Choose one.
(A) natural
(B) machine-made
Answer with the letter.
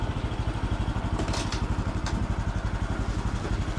A